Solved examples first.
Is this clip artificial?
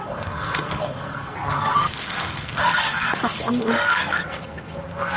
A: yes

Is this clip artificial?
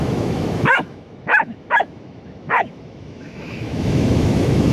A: yes